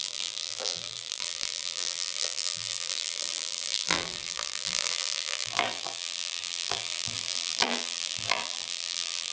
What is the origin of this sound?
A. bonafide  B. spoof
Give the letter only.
B